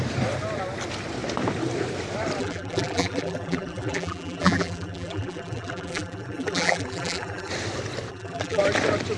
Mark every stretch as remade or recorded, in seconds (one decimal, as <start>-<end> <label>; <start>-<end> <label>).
0.0-2.4 recorded; 2.4-7.5 remade; 7.5-8.1 recorded; 8.1-8.6 remade; 8.6-9.2 recorded